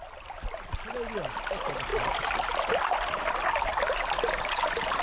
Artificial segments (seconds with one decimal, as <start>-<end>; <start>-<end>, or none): none